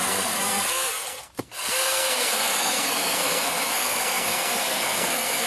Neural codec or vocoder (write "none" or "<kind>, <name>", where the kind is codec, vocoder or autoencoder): codec, SNAC